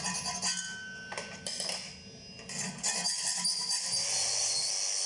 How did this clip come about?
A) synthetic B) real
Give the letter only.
B